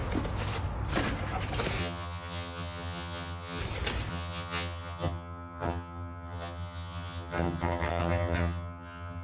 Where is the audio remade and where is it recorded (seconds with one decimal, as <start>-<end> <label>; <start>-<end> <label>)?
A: 0.0-1.8 recorded; 1.8-3.6 remade; 3.6-4.1 recorded; 4.1-9.2 remade